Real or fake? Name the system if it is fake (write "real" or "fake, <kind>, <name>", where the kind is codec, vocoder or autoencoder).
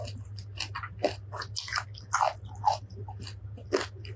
real